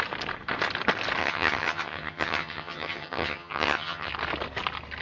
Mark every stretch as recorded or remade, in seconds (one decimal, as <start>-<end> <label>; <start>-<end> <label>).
0.0-1.2 recorded; 1.2-4.1 remade; 4.1-5.0 recorded